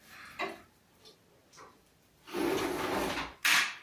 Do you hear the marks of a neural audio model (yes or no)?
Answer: no